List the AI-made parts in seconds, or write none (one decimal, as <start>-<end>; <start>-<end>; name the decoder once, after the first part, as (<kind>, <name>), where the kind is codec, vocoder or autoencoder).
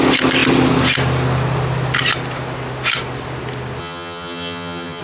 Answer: 3.8-5.0 (vocoder, HiFi-GAN)